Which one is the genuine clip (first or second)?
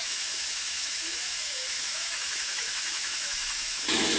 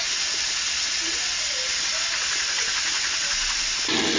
second